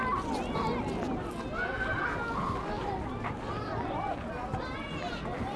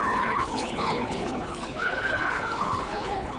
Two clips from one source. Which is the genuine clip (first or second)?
first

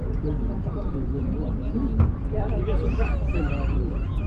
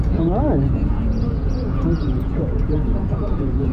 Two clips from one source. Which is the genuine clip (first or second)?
first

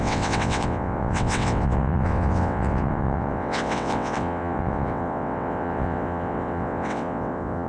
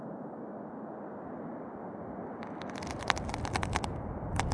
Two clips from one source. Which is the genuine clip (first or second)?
second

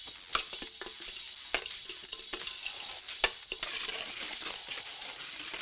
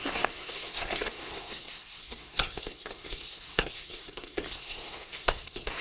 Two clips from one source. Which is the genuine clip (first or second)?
first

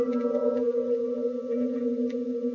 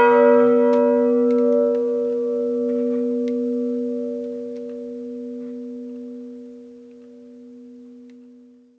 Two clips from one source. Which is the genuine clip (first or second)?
second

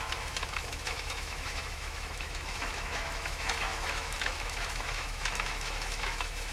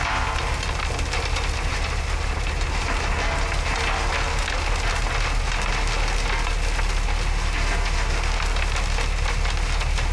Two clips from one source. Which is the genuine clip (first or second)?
second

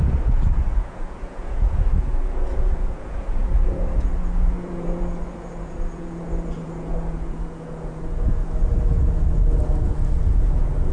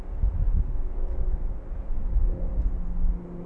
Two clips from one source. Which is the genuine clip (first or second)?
second